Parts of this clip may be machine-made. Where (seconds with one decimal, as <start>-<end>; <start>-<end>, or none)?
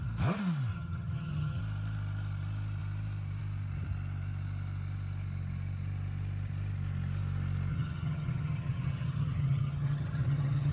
0.7-1.6; 7.7-10.7